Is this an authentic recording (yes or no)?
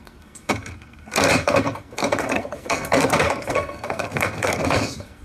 no